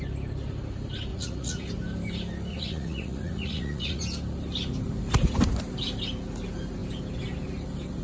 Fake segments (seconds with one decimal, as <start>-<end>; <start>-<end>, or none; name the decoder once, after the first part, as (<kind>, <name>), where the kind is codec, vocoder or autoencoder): 1.1-1.7 (vocoder, Vocos); 2.5-4.0

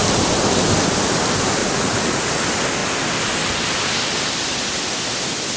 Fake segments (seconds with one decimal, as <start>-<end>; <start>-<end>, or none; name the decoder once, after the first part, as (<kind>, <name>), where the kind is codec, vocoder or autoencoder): 1.6-2.3 (vocoder, Vocos)